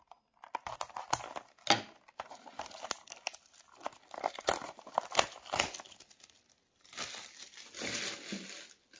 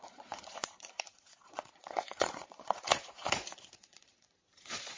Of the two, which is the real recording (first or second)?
first